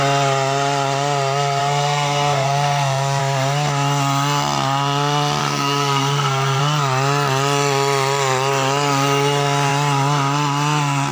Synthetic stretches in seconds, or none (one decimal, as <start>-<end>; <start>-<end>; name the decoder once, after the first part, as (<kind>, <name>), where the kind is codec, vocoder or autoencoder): 1.6-3.2 (codec, SNAC); 5.4-6.6